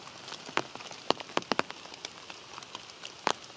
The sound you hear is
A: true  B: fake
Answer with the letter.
A